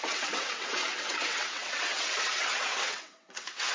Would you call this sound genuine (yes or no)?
no